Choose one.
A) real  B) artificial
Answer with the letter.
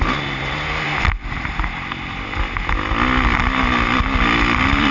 A